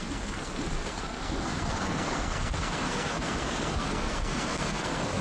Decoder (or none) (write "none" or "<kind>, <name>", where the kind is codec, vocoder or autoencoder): codec, SNAC